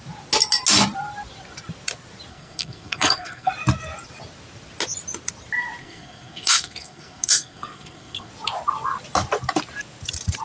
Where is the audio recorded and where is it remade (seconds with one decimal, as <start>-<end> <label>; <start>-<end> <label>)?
0.0-2.3 recorded; 2.3-3.5 remade; 3.5-5.8 recorded; 5.8-8.3 remade; 8.3-10.4 recorded